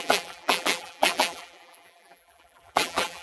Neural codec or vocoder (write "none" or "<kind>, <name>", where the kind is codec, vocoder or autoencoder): vocoder, BigVGAN v2